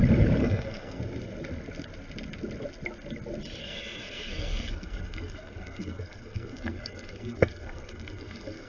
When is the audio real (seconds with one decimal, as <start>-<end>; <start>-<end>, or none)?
0.0-0.4; 1.0-3.6